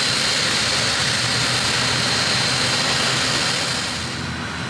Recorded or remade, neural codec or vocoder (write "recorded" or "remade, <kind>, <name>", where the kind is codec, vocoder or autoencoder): recorded